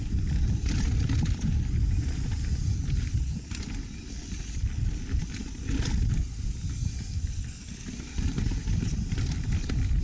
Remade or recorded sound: recorded